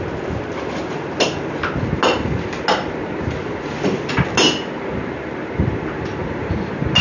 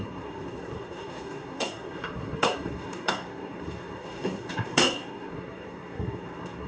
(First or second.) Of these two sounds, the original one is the first